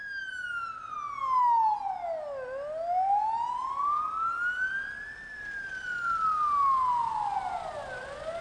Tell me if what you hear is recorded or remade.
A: recorded